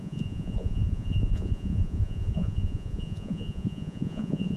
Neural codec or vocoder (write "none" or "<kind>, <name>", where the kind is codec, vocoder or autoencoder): vocoder, Vocos